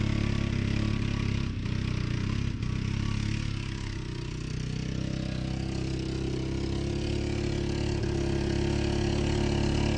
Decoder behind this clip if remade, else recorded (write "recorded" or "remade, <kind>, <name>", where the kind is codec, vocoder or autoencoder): recorded